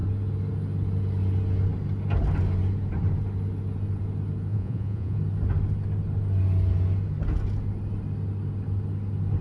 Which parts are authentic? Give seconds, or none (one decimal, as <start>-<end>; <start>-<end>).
0.0-4.5; 5.2-9.4